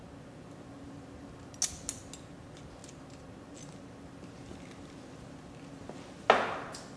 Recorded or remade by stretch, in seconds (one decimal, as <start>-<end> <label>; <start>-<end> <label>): 0.0-7.0 recorded